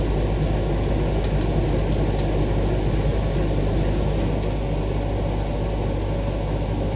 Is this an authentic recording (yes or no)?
yes